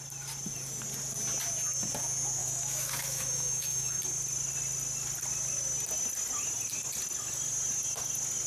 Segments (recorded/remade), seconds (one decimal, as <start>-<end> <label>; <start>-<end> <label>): 0.0-2.4 recorded; 2.4-4.0 remade; 4.0-8.5 recorded